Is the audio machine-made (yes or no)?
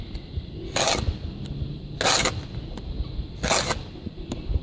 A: no